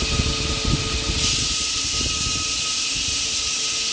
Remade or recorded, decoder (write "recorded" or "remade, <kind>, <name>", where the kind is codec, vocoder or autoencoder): recorded